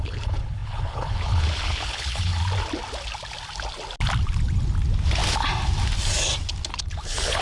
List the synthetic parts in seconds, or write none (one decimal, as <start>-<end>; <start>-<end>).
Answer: 0.0-2.4; 6.8-7.4